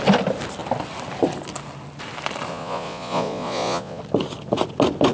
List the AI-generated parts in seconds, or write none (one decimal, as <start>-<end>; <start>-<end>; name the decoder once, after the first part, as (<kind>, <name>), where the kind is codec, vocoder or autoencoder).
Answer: 2.5-4.0 (vocoder, Vocos)